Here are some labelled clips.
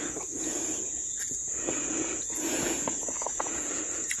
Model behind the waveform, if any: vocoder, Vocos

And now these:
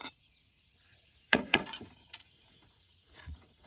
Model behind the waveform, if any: vocoder, Vocos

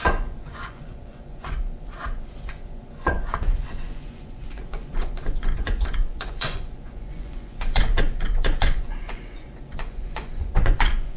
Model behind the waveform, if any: vocoder, Vocos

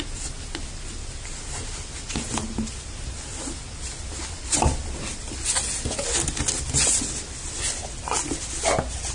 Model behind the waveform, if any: none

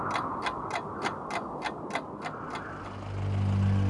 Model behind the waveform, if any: none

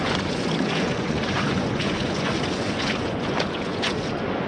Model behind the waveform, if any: vocoder, Vocos